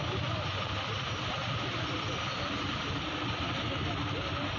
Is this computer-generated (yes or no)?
no